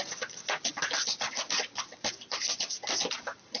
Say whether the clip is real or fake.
real